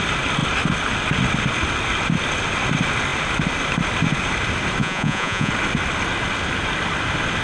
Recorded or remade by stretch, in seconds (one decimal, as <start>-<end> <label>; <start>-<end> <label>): 0.0-4.8 recorded; 4.8-5.5 remade; 5.5-7.4 recorded